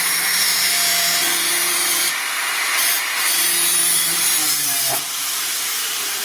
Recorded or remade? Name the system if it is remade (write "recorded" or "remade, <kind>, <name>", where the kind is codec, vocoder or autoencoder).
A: remade, vocoder, BigVGAN v2